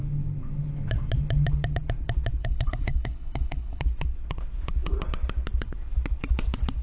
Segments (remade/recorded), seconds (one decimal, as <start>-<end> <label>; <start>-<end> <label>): 0.0-2.4 recorded; 2.4-3.8 remade; 3.8-6.8 recorded